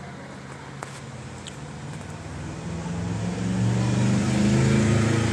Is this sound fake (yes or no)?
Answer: no